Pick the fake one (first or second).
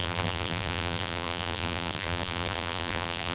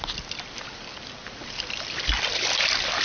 first